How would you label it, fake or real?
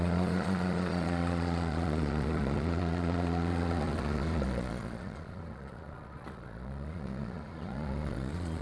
fake